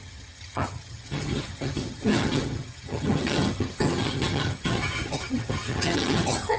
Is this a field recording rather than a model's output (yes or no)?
no